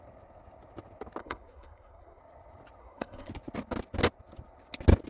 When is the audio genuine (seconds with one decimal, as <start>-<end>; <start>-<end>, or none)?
0.0-1.2; 2.2-2.8; 3.3-5.1